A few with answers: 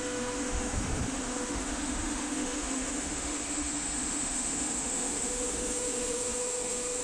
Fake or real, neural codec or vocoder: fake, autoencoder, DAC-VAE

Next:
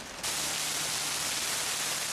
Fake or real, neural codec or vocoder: real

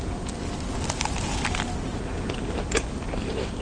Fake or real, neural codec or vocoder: real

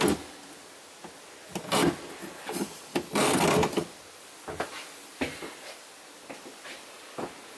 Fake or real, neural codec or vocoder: real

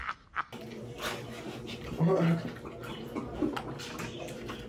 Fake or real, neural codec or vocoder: real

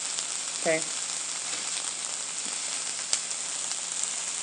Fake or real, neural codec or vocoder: real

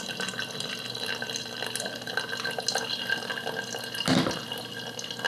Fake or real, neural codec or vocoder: real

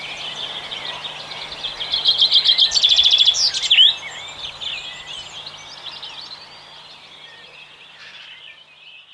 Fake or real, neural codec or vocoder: real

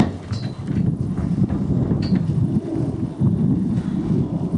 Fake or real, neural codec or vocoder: real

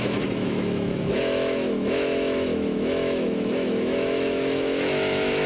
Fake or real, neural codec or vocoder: fake, autoencoder, DAC-VAE